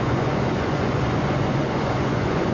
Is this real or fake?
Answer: fake